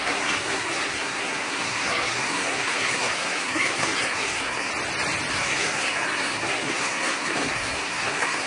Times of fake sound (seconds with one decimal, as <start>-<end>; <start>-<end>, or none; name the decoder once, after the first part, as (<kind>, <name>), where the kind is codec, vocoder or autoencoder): 0.0-4.7 (codec, SNAC); 5.3-8.5